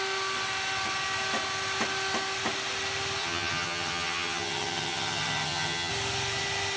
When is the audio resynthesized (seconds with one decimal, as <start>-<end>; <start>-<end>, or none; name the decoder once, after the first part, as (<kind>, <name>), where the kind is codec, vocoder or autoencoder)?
3.2-5.9 (vocoder, HiFi-GAN)